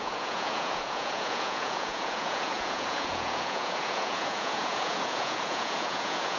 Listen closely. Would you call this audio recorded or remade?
remade